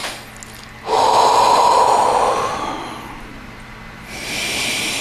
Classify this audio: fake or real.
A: real